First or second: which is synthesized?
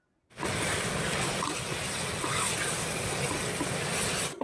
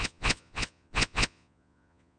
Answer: second